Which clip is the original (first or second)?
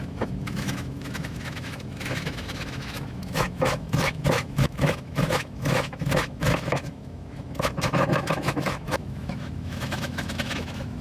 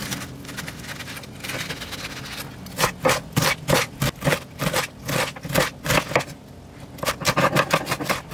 second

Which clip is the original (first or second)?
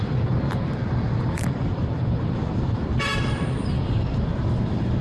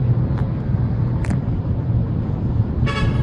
second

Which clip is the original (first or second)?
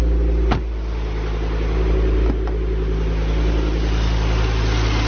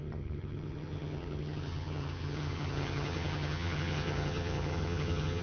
first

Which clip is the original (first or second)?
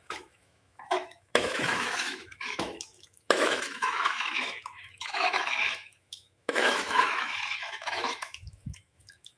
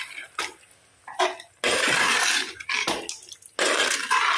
second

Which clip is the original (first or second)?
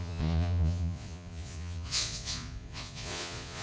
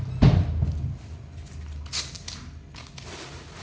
second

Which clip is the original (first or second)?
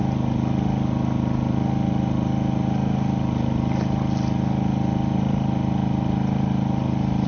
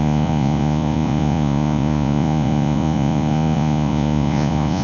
first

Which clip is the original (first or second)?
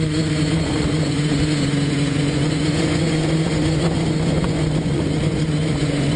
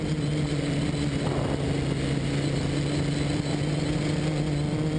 second